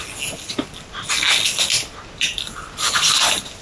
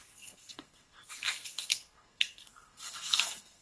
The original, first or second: first